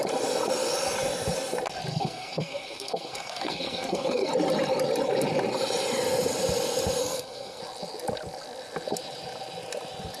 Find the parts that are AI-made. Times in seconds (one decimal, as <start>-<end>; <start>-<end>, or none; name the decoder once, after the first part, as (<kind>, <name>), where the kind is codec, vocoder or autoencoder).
1.9-4.3 (codec, SNAC); 7.0-7.6